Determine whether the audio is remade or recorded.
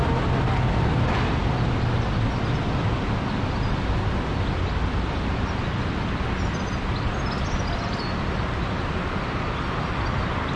recorded